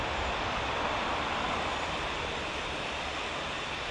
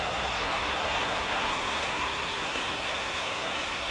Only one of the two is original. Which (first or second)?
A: first